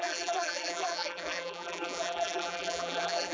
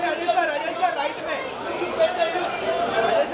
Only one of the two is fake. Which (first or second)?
first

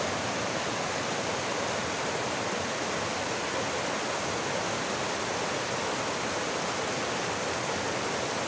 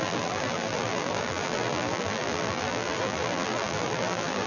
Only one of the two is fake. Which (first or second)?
second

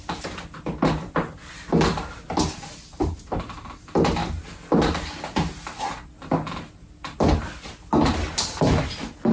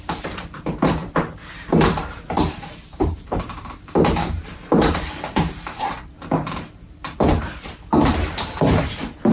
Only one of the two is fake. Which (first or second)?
second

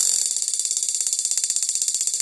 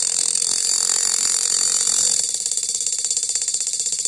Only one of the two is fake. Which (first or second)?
second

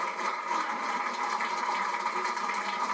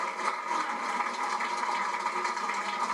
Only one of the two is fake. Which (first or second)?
first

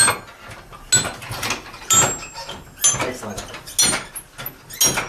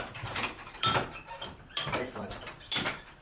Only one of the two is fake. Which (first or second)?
second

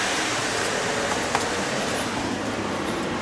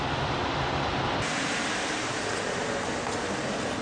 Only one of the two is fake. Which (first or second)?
first